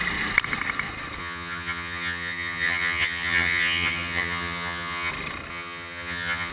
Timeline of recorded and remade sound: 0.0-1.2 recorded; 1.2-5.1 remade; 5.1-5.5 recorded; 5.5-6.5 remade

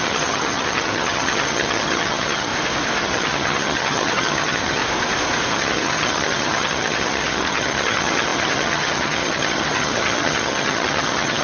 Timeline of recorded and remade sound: 0.0-2.5 remade; 2.5-3.0 recorded; 3.0-4.8 remade; 4.8-5.5 recorded; 5.5-11.4 remade

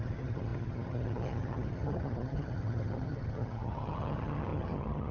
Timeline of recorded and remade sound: 0.0-5.1 remade

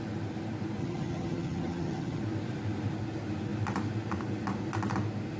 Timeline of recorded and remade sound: 0.0-0.8 recorded; 0.8-2.2 remade; 2.2-5.4 recorded

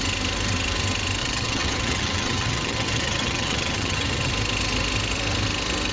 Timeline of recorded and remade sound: 0.0-1.2 recorded; 1.2-4.3 remade; 4.3-5.9 recorded

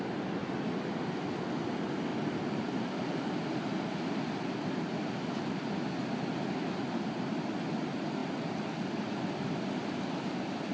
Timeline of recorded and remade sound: 0.0-10.7 recorded